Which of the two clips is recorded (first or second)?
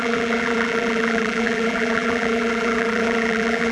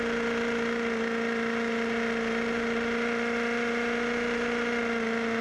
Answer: second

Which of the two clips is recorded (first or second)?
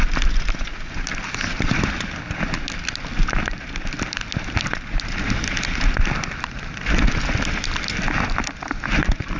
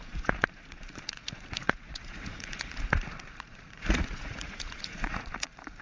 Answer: first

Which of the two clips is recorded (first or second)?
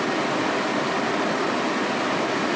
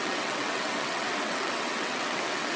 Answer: first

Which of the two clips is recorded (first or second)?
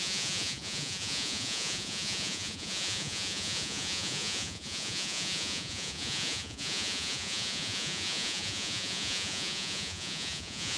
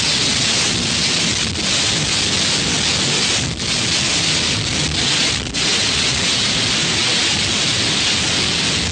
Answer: second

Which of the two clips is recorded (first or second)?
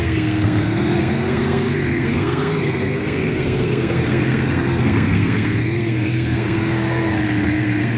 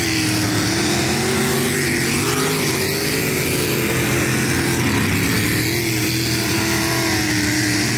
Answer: second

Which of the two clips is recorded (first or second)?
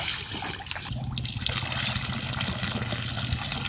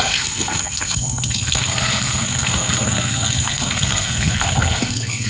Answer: first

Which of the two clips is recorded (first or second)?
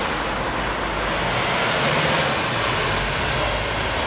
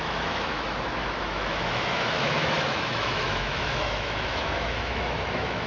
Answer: first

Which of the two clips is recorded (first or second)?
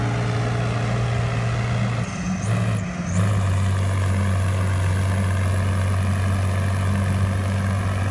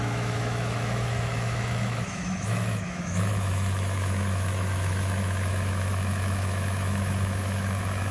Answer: first